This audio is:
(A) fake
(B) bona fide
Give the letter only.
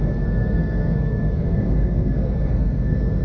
A